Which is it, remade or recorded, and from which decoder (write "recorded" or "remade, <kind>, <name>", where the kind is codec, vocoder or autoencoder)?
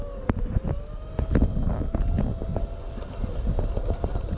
recorded